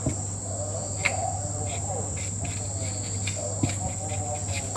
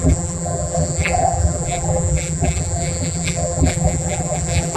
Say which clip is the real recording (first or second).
first